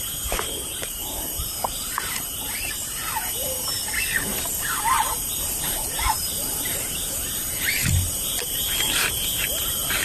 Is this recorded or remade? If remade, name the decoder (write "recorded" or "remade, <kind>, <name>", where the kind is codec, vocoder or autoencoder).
remade, vocoder, BigVGAN v2